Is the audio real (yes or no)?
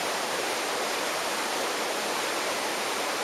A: no